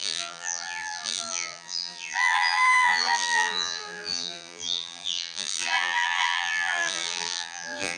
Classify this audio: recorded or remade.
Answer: remade